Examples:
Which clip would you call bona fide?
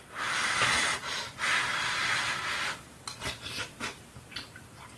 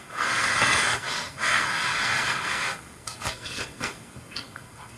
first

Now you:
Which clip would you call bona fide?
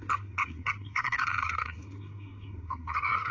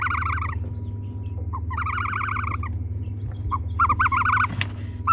second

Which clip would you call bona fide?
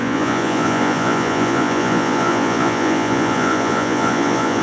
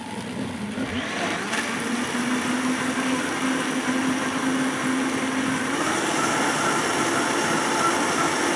second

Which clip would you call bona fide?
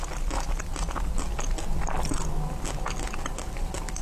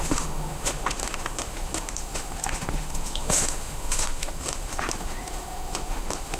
first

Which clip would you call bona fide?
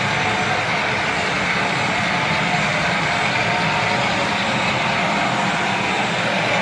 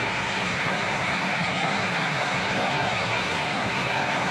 first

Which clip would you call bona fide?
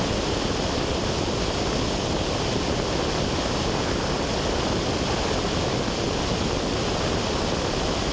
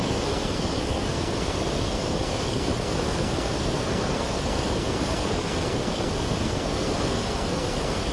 first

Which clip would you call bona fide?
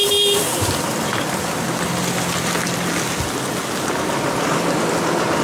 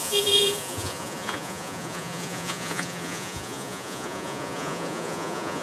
first